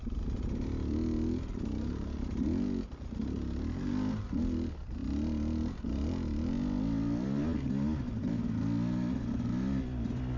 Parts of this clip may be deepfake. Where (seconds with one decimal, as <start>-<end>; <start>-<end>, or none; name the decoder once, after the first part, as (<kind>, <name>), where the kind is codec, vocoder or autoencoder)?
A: none